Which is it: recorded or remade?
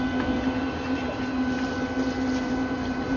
recorded